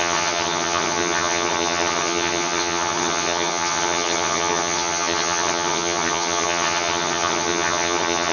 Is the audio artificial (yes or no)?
yes